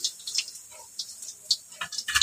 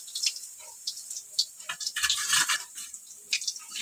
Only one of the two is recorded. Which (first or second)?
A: first